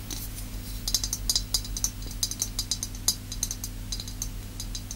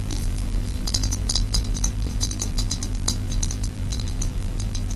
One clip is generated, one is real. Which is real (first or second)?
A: first